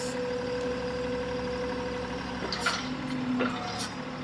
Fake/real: real